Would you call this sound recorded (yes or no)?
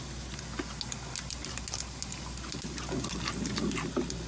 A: yes